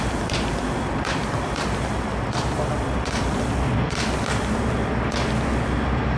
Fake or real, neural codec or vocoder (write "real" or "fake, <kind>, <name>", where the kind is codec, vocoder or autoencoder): real